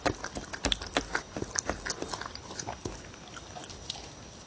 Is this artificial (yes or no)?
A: no